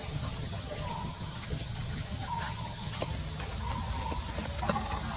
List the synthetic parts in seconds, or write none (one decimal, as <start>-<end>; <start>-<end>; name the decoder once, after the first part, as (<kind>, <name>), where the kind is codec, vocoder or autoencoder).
0.0-3.1 (vocoder, HiFi-GAN)